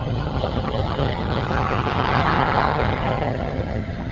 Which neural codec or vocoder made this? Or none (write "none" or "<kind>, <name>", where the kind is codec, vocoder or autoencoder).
vocoder, HiFi-GAN